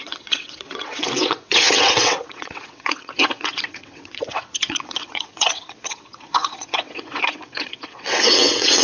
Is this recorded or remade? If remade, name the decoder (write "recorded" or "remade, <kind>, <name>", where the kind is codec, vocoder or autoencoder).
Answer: remade, vocoder, WaveNeXt